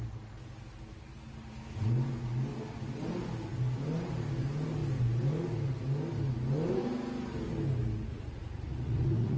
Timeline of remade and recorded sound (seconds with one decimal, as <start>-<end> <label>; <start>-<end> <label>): 0.0-8.1 recorded; 8.1-9.4 remade